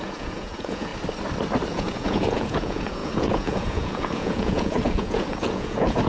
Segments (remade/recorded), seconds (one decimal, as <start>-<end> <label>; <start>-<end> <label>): 0.0-0.9 remade; 0.9-1.7 recorded; 1.7-6.1 remade